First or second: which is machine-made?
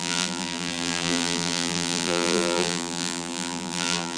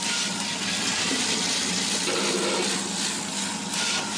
first